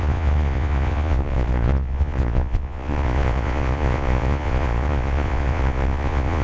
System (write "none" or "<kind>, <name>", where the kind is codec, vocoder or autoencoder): vocoder, Vocos